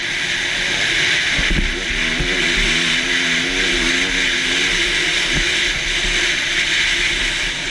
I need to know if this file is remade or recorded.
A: recorded